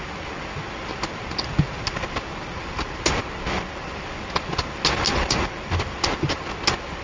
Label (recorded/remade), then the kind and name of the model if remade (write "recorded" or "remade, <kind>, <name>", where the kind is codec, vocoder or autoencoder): recorded